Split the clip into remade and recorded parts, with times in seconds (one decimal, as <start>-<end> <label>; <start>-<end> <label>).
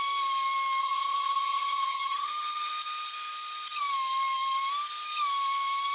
0.0-0.8 recorded; 0.8-2.7 remade; 2.7-5.9 recorded